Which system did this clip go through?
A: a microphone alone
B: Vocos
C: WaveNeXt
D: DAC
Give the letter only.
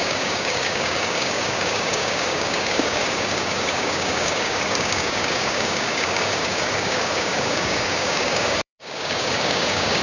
D